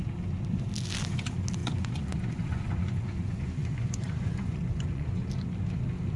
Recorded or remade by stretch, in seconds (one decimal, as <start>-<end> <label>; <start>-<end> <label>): 0.0-1.6 recorded; 1.6-5.3 remade; 5.3-6.2 recorded